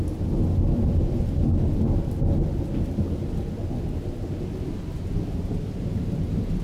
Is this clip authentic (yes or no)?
yes